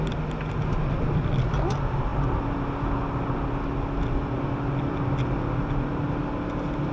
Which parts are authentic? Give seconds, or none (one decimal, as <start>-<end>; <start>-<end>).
0.0-6.9